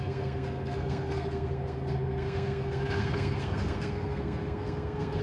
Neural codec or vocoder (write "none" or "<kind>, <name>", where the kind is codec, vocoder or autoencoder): codec, SNAC